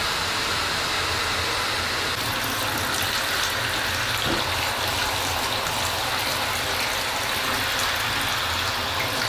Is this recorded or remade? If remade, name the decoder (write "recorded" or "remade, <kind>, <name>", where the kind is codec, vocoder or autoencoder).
recorded